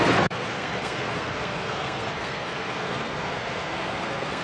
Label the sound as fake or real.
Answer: fake